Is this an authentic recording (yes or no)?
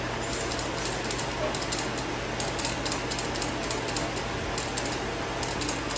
yes